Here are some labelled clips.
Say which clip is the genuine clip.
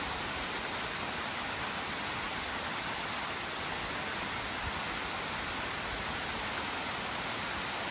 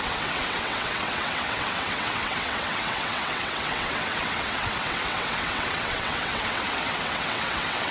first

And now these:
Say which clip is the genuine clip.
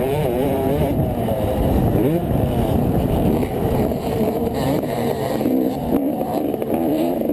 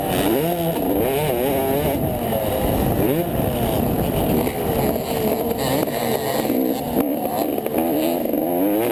second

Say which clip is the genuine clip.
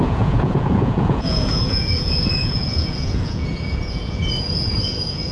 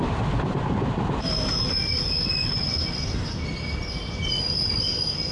second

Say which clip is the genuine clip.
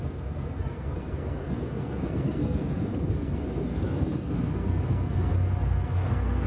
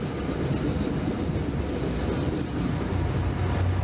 second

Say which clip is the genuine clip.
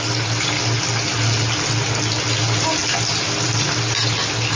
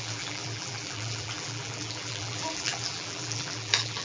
first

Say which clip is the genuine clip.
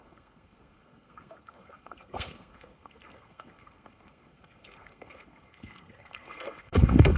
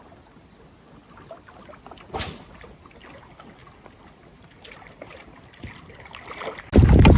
second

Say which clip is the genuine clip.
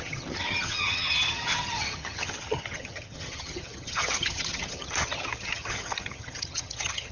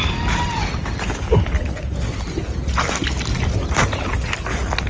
second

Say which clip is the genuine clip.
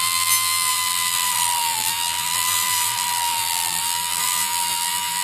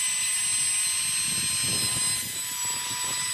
second